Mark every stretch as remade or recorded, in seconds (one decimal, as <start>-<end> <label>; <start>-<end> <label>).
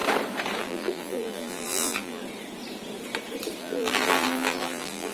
0.0-0.6 recorded; 0.6-2.2 remade; 2.2-3.6 recorded; 3.6-5.1 remade